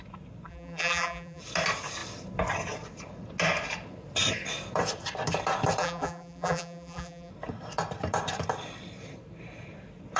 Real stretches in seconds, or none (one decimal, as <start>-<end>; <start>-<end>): 0.0-0.5; 1.4-5.8; 7.3-10.2